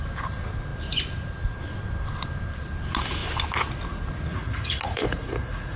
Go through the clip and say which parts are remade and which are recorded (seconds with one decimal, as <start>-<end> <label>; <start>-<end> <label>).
0.0-4.3 recorded; 4.3-5.8 remade